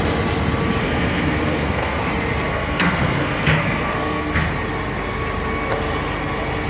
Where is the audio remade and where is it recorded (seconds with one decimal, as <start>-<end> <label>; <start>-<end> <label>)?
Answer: 0.0-0.8 recorded; 0.8-2.0 remade; 2.0-2.5 recorded; 2.5-4.3 remade; 4.3-6.7 recorded